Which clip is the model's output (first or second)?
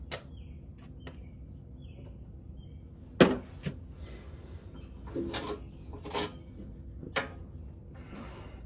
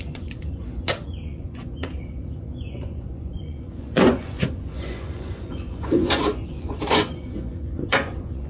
second